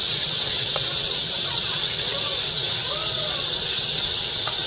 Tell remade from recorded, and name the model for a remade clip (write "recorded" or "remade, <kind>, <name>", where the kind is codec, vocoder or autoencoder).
remade, vocoder, WaveNeXt